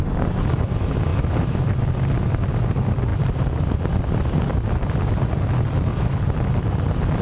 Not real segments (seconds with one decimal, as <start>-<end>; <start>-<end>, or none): 1.1-1.8; 3.1-5.4; 5.9-6.6